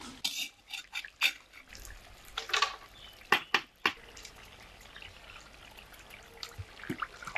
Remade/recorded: recorded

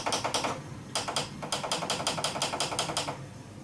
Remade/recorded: recorded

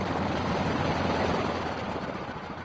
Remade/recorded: recorded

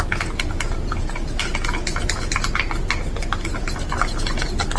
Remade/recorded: recorded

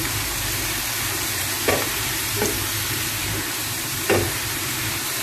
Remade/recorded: remade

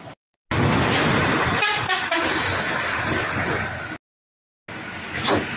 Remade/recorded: recorded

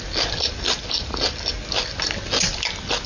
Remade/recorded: recorded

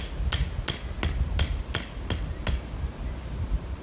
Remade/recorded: recorded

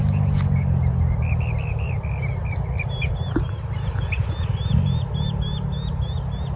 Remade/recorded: recorded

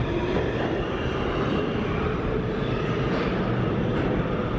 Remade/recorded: remade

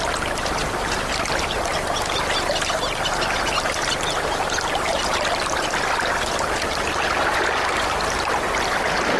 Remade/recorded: recorded